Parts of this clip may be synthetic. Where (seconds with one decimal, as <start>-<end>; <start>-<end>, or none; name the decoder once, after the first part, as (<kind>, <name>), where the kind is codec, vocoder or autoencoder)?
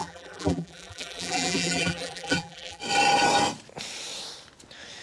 0.0-2.8 (vocoder, BigVGAN v2)